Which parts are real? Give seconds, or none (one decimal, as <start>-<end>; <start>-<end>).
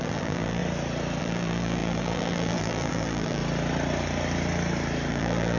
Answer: 0.6-1.2; 3.4-5.1